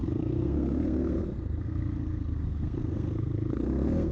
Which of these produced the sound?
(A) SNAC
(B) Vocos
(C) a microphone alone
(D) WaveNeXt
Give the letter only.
A